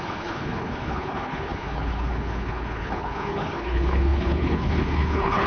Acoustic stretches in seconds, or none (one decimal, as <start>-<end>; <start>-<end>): none